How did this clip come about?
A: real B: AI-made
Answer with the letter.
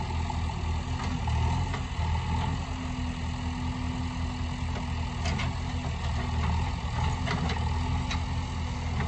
A